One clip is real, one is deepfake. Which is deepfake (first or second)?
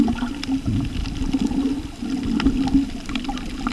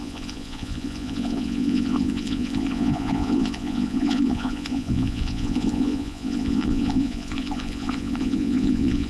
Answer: second